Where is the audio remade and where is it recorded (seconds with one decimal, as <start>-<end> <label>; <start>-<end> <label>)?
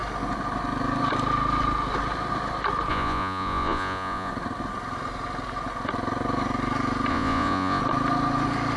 0.0-2.9 recorded; 2.9-4.3 remade; 4.3-7.1 recorded; 7.1-7.8 remade; 7.8-8.8 recorded